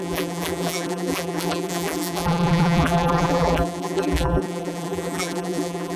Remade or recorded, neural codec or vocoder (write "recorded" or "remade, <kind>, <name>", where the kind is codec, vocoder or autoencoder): remade, vocoder, BigVGAN v2